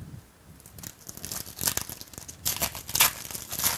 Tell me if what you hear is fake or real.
real